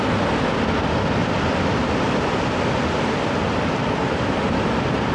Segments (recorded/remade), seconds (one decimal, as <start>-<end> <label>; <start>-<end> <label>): 0.0-1.2 remade; 1.2-3.6 recorded; 3.6-5.1 remade